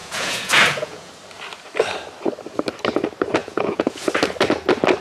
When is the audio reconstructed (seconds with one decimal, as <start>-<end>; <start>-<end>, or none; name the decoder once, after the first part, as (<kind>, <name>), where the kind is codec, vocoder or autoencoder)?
0.0-1.1 (vocoder, Vocos); 3.4-4.1